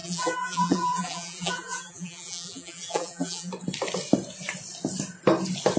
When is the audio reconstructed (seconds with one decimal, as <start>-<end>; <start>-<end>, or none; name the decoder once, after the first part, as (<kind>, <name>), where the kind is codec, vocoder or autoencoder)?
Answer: 0.0-3.5 (vocoder, BigVGAN v2)

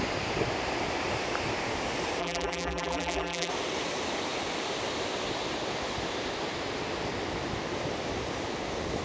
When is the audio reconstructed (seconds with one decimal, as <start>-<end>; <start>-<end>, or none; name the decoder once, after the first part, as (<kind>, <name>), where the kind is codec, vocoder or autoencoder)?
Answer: 2.2-3.5 (vocoder, BigVGAN v2)

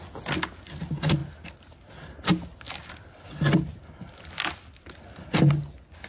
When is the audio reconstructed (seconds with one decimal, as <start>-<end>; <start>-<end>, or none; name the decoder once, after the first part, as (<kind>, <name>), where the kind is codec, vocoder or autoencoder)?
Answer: none